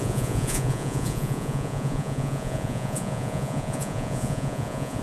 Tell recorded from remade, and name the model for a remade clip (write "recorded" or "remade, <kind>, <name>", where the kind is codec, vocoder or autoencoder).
remade, vocoder, Vocos